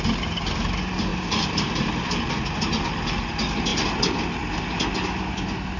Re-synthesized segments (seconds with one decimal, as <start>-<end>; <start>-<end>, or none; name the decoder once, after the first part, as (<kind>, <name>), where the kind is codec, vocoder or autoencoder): 1.1-2.3 (vocoder, BigVGAN v2)